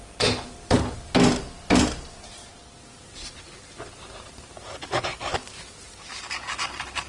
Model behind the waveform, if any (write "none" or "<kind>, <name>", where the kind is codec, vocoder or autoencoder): none